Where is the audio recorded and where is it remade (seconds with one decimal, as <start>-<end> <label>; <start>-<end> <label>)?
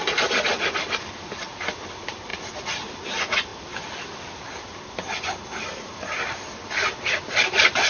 0.0-7.9 recorded